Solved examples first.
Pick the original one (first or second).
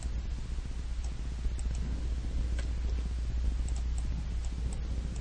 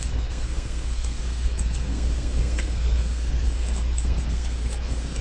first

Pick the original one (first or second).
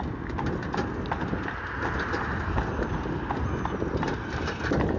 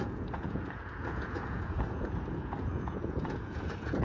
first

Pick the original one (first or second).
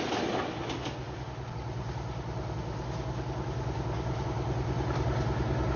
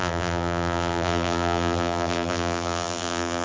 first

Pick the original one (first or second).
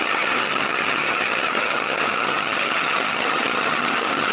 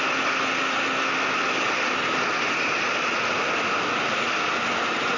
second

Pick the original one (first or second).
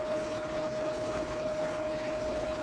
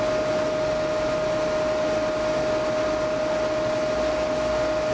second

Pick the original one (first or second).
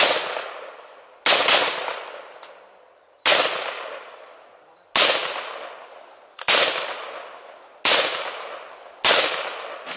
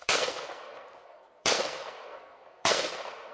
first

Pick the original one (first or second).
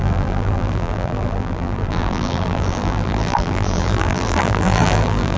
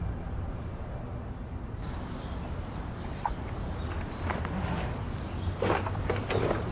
second